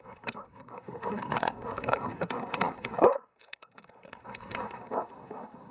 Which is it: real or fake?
fake